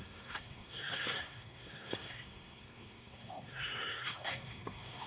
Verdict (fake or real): fake